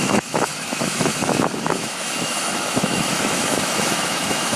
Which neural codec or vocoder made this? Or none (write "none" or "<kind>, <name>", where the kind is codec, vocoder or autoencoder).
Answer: autoencoder, DAC-VAE